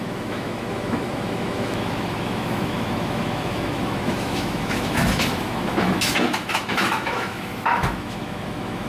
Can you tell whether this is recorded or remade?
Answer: remade